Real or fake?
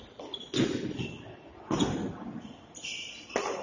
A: real